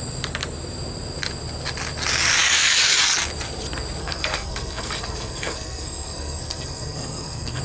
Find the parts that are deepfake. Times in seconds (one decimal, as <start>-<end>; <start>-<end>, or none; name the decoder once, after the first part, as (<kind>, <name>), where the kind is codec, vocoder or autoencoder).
4.0-7.6 (codec, SNAC)